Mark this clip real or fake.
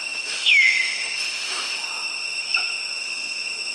fake